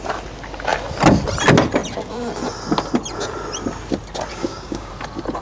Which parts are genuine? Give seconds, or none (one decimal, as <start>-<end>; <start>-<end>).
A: 0.0-4.3; 4.9-5.4